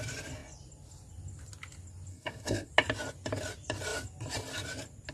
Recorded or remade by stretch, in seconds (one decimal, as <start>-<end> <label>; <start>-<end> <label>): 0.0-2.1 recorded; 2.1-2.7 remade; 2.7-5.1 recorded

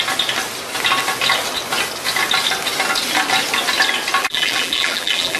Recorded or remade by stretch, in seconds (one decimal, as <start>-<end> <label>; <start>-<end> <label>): 0.0-4.2 recorded; 4.2-5.4 remade

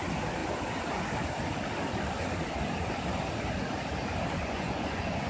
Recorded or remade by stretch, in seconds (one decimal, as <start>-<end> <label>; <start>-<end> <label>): 0.0-4.4 recorded; 4.4-5.3 remade